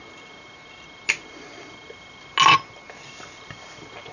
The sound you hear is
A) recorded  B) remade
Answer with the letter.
A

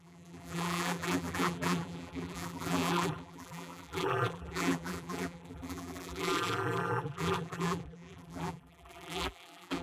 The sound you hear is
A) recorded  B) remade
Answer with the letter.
B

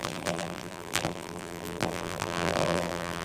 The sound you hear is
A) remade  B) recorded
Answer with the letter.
A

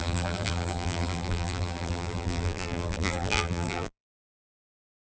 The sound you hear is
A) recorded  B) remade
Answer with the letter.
B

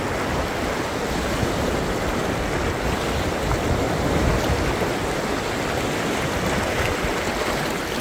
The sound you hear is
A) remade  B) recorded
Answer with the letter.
B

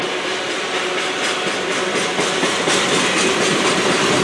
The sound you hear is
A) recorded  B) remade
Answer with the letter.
B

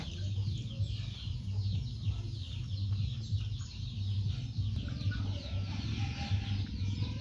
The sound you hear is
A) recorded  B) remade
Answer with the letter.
A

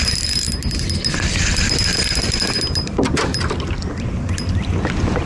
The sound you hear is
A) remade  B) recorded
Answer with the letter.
B